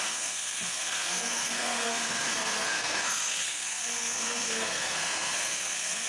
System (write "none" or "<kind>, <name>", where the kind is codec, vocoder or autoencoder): codec, SNAC